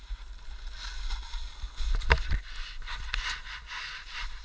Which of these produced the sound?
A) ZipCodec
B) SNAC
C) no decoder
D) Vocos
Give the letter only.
C